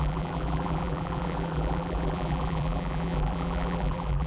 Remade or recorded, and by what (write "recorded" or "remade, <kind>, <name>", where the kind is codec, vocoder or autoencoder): remade, vocoder, BigVGAN v2